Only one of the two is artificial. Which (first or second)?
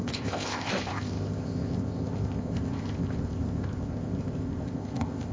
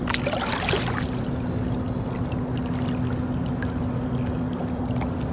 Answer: first